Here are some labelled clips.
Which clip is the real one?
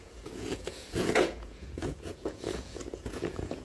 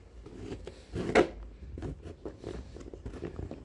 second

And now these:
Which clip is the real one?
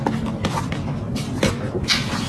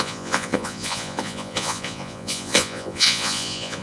first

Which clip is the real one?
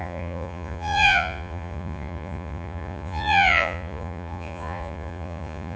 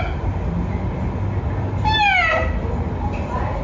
second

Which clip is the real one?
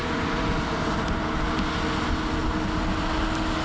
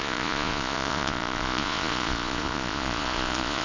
first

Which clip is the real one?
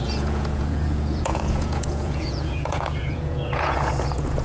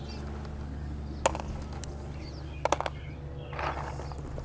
second